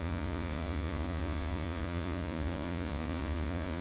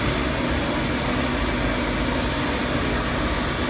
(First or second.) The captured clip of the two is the second